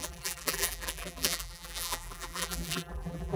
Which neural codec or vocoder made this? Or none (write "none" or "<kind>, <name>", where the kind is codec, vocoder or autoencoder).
vocoder, BigVGAN v2